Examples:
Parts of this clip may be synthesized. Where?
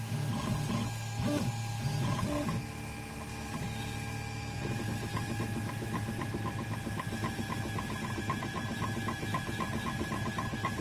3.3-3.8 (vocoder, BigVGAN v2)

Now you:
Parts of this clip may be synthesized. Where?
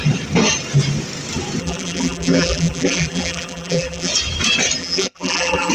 1.6-4.1 (vocoder, BigVGAN v2); 4.8-5.7